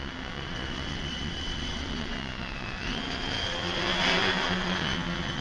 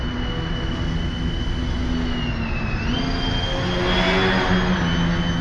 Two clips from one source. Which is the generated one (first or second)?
first